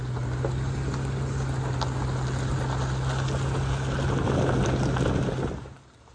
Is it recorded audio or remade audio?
recorded